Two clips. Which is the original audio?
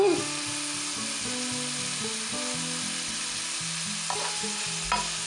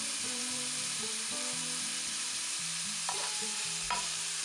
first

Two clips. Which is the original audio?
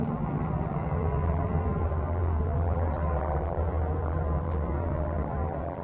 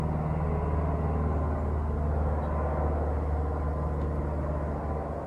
second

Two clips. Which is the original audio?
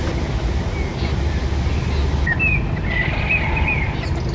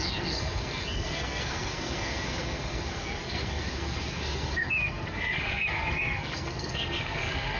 first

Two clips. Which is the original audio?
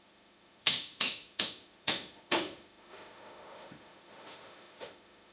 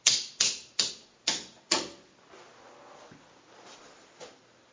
second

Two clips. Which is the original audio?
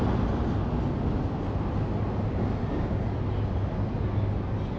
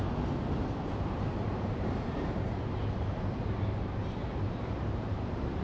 first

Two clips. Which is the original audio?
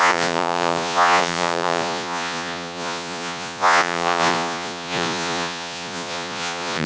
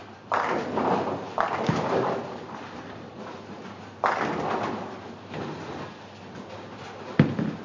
second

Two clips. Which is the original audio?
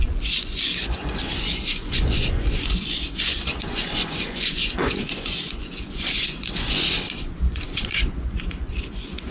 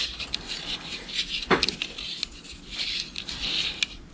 second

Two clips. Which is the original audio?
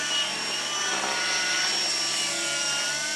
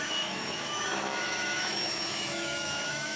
first